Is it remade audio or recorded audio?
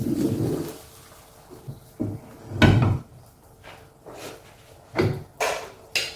recorded